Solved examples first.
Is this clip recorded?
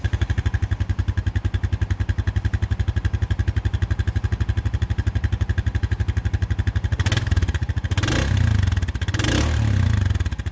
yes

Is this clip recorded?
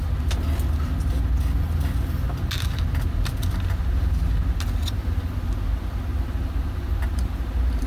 yes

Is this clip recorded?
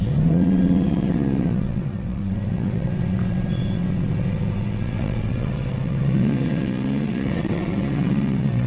no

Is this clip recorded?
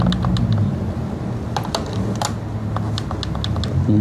yes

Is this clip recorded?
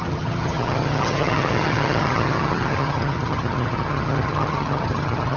no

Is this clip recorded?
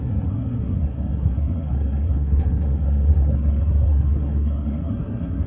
no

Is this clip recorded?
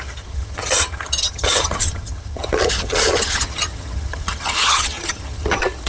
no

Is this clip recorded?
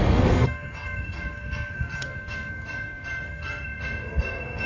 no